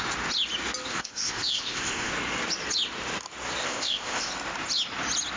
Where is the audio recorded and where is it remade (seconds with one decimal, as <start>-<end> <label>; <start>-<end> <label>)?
0.0-0.9 recorded; 0.9-2.1 remade; 2.1-3.6 recorded; 3.6-4.3 remade; 4.3-5.4 recorded